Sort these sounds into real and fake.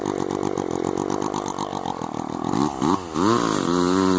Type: real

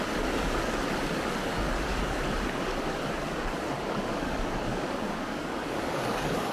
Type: fake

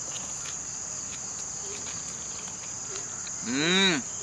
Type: real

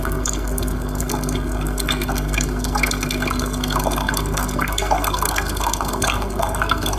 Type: fake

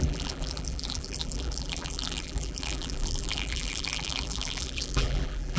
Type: fake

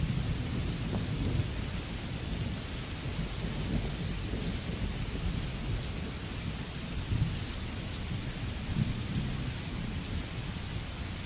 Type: real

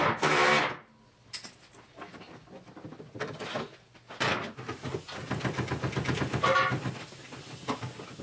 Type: real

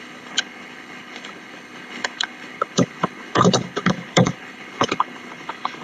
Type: fake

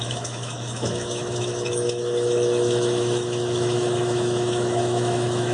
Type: fake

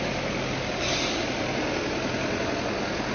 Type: real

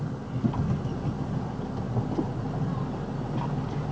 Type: real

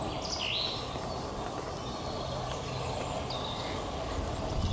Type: real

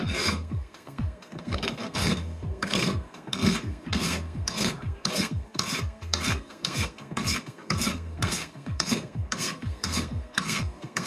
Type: fake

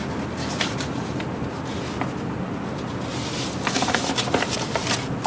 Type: real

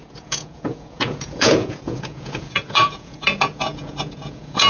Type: fake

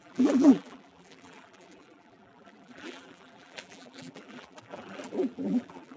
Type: fake